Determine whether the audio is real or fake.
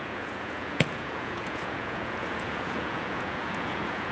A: fake